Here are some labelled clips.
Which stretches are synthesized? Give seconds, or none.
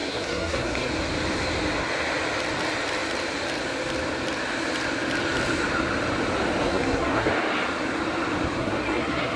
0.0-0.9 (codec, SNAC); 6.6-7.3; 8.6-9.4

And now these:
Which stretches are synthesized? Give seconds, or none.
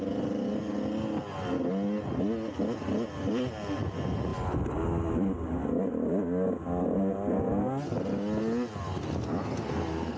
none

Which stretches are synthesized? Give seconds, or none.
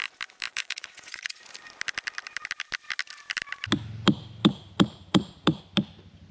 0.5-1.4 (vocoder, Vocos); 4.4-5.6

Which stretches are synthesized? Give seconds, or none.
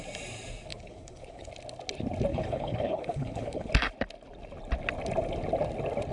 0.7-1.5 (codec, HILCodec); 2.3-3.7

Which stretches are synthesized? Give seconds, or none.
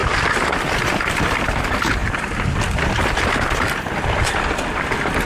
none